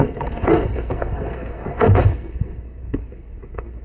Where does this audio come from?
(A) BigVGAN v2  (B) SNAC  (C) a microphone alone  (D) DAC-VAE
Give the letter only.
B